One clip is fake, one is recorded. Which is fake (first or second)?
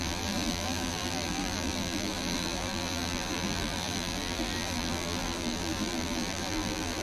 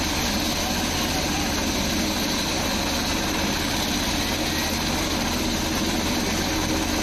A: first